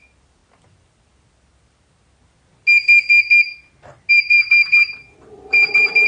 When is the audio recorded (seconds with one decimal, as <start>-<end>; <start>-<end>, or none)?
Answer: 0.4-4.1